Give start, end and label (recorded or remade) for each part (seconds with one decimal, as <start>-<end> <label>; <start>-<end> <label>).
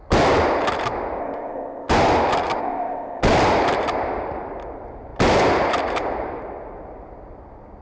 0.0-1.2 recorded; 1.2-1.9 remade; 1.9-2.6 recorded; 2.6-3.2 remade; 3.2-7.8 recorded